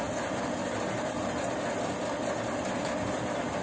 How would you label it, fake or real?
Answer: real